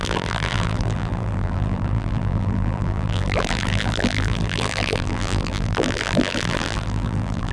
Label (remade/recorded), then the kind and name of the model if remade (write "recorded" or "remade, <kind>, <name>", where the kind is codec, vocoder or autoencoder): remade, vocoder, BigVGAN v2